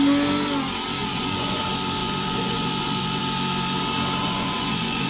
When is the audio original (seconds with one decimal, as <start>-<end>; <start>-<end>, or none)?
0.0-1.0; 1.6-2.0; 3.2-4.2